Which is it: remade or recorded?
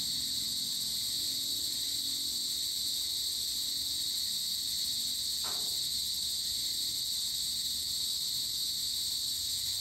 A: recorded